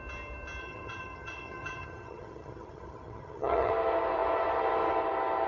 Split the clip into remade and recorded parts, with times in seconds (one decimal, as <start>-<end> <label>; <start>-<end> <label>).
0.0-0.6 recorded; 0.6-3.7 remade; 3.7-5.5 recorded